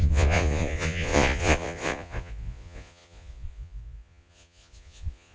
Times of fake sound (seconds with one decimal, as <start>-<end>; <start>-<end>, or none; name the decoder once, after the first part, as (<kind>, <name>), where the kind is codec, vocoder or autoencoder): 0.0-5.3 (vocoder, Vocos)